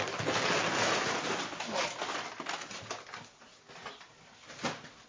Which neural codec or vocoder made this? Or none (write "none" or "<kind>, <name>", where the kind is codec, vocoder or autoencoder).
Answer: none